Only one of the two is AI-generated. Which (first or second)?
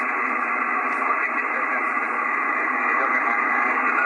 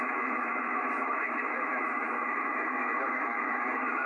second